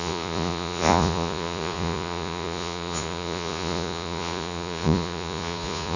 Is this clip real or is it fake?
fake